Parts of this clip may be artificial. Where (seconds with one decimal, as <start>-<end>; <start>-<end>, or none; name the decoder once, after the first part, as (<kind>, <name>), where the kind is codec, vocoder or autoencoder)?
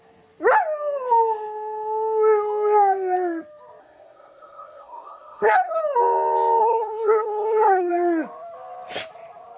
3.8-5.8 (codec, SNAC); 6.6-7.9